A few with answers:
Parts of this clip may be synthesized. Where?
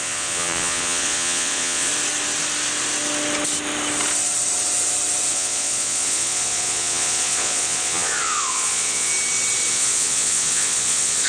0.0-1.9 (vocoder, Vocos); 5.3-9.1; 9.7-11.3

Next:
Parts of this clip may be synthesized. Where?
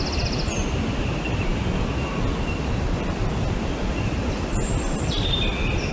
none